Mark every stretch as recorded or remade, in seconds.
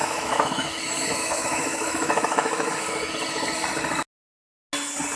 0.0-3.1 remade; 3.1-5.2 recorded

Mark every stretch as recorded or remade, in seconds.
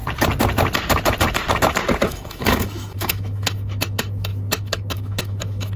0.0-2.1 recorded; 2.1-5.8 remade